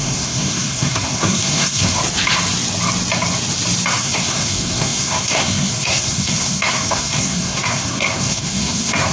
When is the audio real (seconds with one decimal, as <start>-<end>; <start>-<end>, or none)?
2.0-4.0